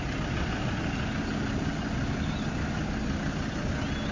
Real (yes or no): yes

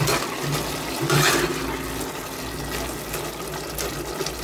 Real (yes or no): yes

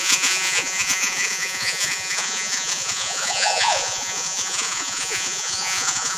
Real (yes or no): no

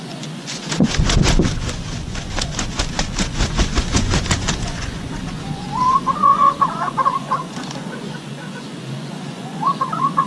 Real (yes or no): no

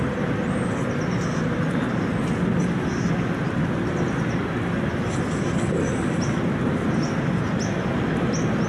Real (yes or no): yes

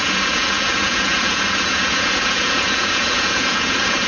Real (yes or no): no